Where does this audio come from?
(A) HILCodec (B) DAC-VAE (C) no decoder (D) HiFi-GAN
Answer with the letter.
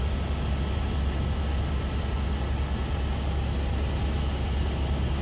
C